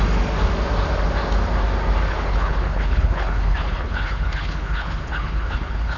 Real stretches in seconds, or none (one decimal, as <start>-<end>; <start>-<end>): 0.0-2.1